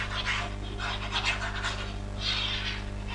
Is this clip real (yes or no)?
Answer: yes